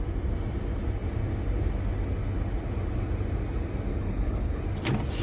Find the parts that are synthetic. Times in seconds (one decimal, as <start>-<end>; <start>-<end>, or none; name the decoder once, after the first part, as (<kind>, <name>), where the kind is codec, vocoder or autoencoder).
3.9-4.6 (codec, HILCodec)